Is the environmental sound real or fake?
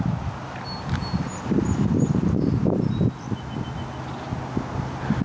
real